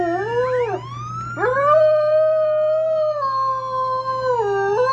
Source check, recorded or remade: recorded